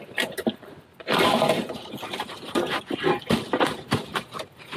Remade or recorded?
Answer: remade